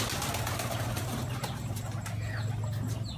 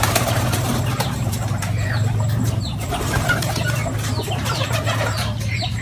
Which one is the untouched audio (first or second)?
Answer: first